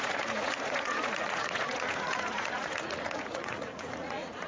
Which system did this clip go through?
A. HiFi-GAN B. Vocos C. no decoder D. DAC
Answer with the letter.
B